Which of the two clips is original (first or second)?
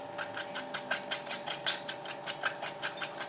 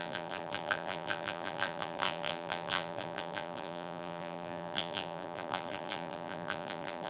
first